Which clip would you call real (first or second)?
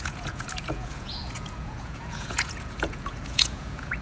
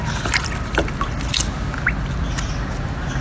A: second